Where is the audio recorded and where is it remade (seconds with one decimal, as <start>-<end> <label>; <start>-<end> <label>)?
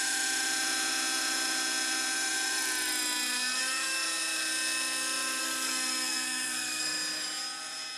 0.0-5.4 recorded; 5.4-6.8 remade; 6.8-8.0 recorded